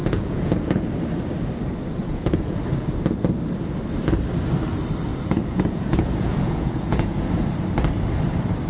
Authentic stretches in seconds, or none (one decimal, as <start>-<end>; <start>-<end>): 0.9-2.0; 2.6-5.1; 7.3-8.7